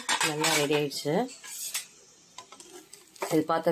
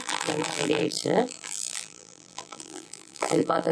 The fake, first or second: second